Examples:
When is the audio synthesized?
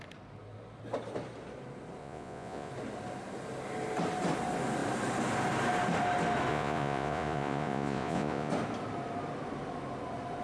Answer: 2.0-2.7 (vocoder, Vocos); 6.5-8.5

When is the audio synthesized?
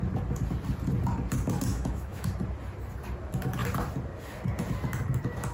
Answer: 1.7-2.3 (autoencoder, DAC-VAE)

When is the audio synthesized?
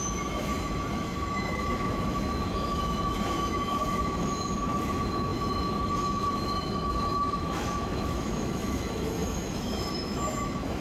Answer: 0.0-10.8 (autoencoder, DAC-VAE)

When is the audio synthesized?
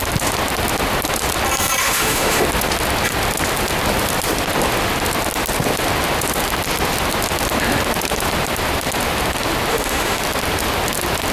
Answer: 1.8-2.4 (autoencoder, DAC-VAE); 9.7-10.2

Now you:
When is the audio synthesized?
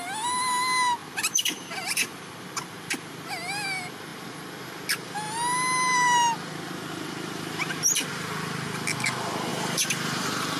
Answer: 1.0-3.3 (vocoder, BigVGAN v2); 9.5-10.6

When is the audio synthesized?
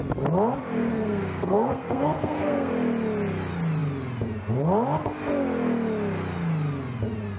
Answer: 0.9-2.7 (codec, SNAC)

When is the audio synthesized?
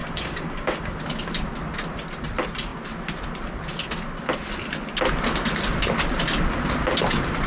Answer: 0.0-0.9 (codec, DAC)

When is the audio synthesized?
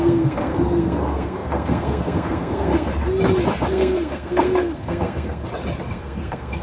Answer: 0.0-2.9 (codec, SNAC); 3.7-5.4; 5.9-6.6